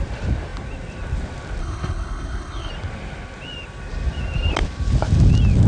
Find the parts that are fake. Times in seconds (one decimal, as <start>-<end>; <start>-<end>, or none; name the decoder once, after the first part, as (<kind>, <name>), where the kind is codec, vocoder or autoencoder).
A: 1.6-2.7 (codec, HILCodec)